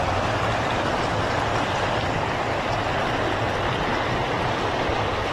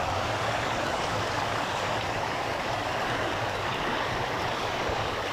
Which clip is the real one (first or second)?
first